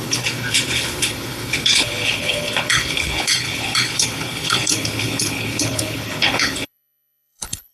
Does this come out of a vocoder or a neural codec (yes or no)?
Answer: yes